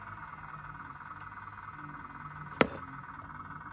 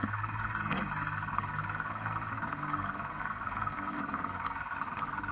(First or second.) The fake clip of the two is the second